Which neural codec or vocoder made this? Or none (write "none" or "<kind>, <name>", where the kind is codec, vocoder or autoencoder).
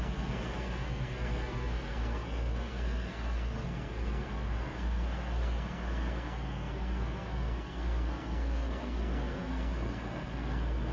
codec, SNAC